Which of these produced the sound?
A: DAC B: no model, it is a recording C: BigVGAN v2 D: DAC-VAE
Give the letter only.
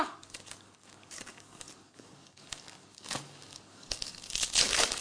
A